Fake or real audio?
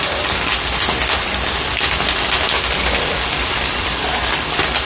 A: real